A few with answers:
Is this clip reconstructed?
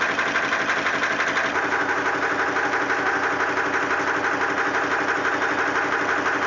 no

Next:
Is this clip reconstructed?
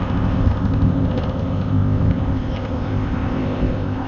yes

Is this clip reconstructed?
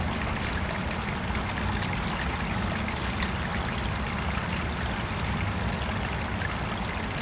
no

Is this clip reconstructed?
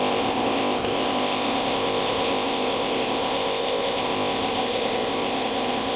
yes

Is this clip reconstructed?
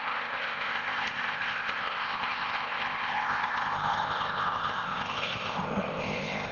yes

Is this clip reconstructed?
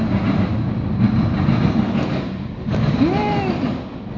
no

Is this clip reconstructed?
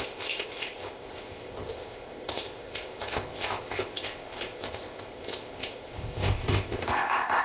yes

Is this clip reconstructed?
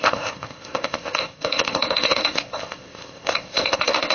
yes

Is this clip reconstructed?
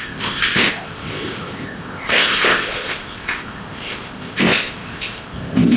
yes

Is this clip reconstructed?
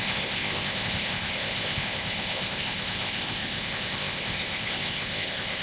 yes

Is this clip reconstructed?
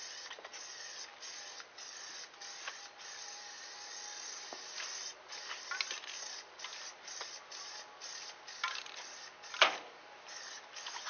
no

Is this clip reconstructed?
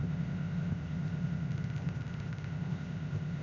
yes